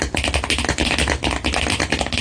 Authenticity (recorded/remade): recorded